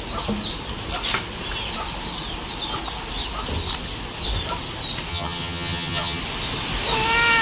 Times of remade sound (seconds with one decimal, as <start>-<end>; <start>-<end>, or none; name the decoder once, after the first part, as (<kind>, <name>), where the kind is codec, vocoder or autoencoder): 5.1-6.2 (vocoder, HiFi-GAN)